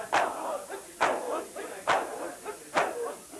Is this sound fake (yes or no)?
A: no